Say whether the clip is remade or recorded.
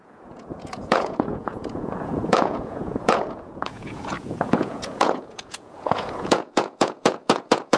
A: remade